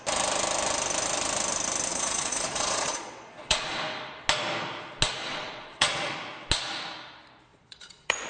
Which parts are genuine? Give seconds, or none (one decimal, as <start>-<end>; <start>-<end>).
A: 0.0-1.9; 3.8-5.3; 6.2-7.5